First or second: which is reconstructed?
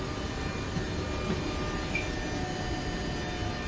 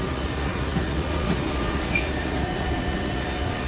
second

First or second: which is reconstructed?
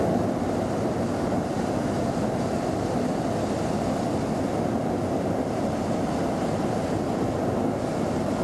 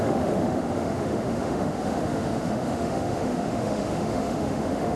second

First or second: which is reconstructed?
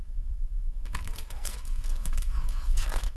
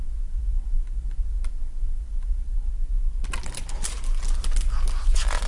first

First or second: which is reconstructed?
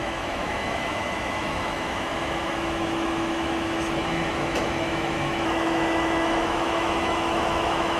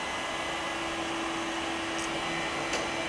first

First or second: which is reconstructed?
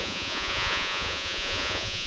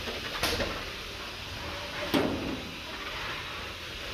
first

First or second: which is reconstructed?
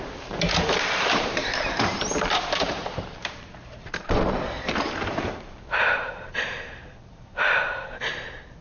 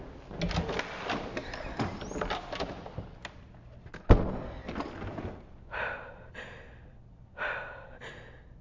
first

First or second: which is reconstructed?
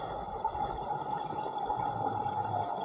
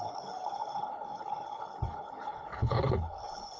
second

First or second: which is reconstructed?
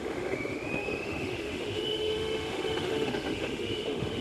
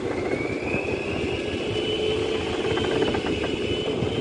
first